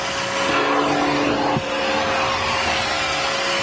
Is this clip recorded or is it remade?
recorded